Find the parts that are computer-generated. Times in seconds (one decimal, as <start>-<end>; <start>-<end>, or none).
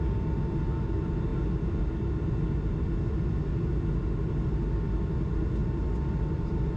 none